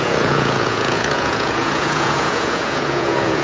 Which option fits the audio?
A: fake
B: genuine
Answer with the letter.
A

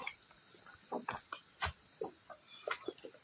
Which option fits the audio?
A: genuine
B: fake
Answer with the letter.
A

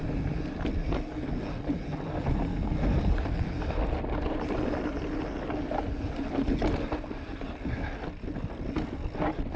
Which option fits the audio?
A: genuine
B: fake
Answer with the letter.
A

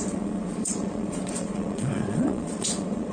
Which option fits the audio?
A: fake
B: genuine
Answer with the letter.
A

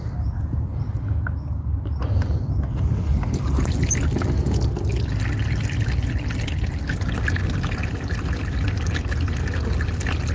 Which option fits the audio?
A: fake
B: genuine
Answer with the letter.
B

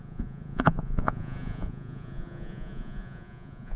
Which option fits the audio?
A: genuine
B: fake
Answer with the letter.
B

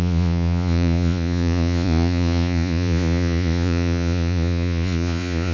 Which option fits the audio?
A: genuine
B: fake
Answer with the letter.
B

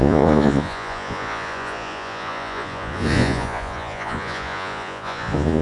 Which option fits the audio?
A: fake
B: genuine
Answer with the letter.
A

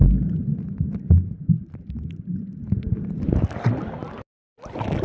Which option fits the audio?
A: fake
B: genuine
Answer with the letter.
B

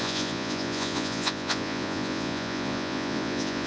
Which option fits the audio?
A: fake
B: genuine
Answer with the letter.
A